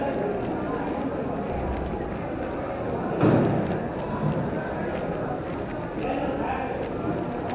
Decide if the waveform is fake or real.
real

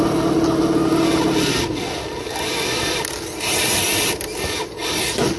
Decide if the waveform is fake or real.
real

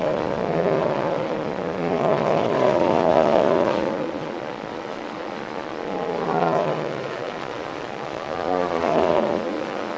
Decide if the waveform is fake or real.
fake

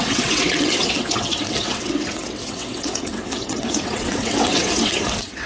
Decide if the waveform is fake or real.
fake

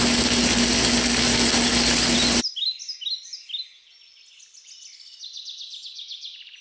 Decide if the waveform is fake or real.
real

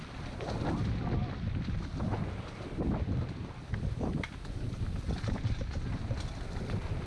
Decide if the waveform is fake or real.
real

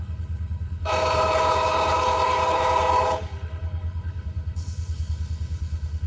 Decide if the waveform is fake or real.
fake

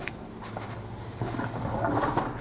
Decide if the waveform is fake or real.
real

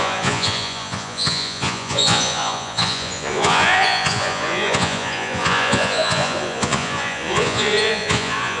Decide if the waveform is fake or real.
fake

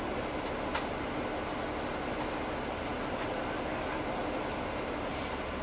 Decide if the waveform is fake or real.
real